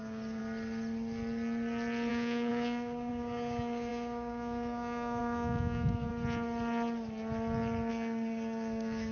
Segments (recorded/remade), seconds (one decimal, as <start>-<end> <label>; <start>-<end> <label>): 0.0-0.4 remade; 0.4-2.1 recorded; 2.1-6.1 remade; 6.1-7.9 recorded; 7.9-9.1 remade